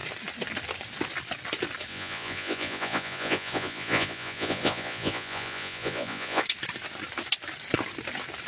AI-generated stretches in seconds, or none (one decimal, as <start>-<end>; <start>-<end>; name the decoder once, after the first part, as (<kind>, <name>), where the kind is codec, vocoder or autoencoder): 1.9-6.4 (vocoder, Vocos)